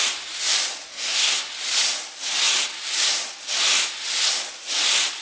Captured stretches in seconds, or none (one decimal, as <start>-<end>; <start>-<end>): 0.0-0.9; 1.4-5.2